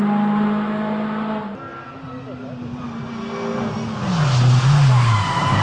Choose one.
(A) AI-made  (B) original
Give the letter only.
B